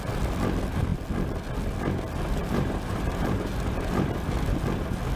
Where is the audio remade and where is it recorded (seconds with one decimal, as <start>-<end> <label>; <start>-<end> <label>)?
0.0-2.4 recorded; 2.4-3.5 remade; 3.5-5.2 recorded